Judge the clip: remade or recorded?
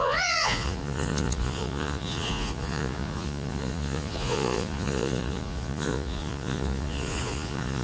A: remade